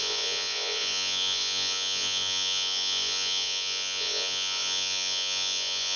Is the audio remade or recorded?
remade